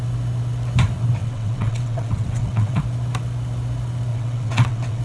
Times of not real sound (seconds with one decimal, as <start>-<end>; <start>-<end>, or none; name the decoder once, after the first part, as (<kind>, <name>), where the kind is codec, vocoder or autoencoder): 1.2-2.8 (vocoder, WaveNeXt); 4.1-5.0